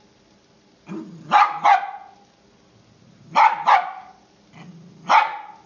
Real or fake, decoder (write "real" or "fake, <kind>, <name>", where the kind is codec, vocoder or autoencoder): real